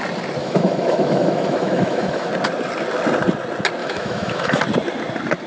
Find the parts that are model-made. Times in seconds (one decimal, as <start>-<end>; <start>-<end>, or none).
0.4-2.3; 3.8-4.6